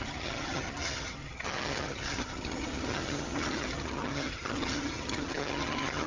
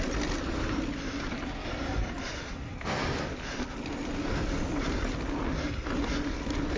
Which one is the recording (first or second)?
second